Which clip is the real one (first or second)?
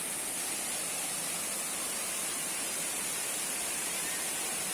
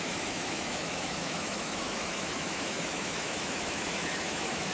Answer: first